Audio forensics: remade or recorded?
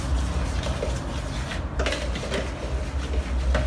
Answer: recorded